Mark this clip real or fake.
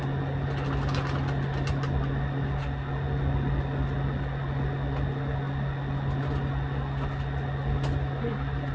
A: real